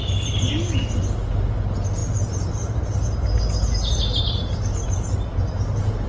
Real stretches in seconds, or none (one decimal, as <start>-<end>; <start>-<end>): 0.0-6.1